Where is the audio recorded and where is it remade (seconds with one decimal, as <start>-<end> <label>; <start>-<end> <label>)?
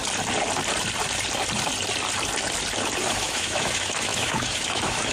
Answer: 0.0-3.1 recorded; 3.1-5.1 remade